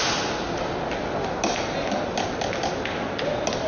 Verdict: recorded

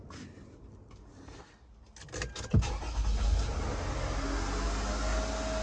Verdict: recorded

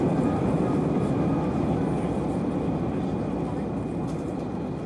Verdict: remade